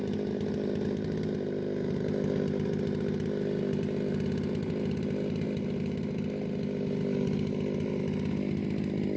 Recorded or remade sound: recorded